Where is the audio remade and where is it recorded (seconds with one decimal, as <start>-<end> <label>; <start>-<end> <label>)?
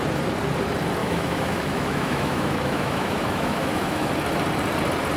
0.0-1.0 recorded; 1.0-4.1 remade; 4.1-5.2 recorded